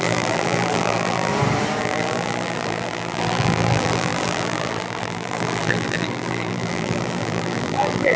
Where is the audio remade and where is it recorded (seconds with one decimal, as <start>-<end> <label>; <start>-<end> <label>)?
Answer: 0.0-1.3 remade; 1.3-1.8 recorded; 1.8-8.2 remade